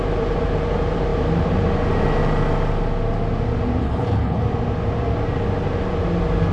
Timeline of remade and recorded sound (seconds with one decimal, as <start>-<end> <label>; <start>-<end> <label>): 0.0-3.8 recorded; 3.8-4.4 remade; 4.4-6.5 recorded